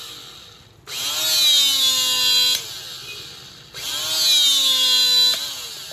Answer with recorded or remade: recorded